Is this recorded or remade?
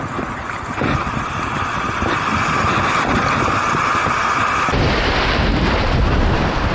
recorded